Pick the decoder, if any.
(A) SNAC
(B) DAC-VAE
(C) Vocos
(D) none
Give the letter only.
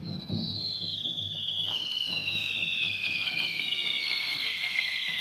A